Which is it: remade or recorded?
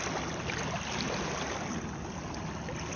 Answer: recorded